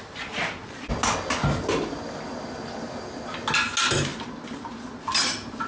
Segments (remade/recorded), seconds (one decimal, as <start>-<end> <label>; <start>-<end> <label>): 0.0-5.7 recorded